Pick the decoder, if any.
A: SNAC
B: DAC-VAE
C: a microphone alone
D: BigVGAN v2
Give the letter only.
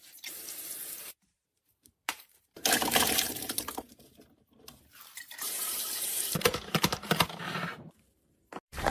D